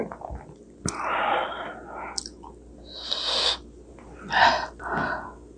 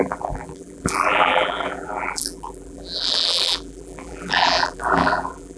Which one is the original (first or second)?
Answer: first